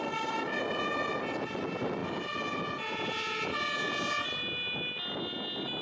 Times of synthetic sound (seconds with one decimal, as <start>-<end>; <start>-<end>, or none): none